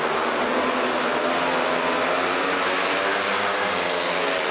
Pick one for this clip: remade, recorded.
recorded